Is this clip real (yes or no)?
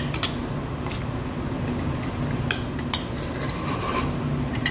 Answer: yes